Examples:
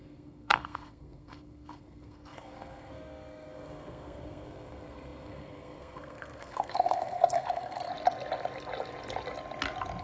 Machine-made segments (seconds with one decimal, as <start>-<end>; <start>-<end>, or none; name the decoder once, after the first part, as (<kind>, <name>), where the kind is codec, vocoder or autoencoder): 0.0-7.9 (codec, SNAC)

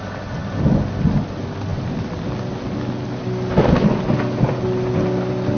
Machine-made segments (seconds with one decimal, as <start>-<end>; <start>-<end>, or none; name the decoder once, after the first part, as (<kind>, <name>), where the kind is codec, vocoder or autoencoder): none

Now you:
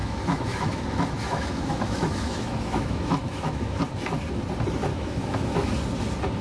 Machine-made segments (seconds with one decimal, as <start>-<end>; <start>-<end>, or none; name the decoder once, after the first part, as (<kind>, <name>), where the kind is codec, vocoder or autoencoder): 0.0-3.8 (autoencoder, DAC-VAE); 4.9-5.7

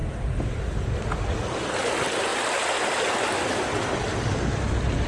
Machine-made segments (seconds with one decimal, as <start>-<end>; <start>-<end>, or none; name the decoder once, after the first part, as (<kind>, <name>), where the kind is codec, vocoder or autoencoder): 0.0-1.9 (vocoder, BigVGAN v2); 2.3-4.2